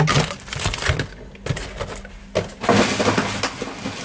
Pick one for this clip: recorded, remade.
recorded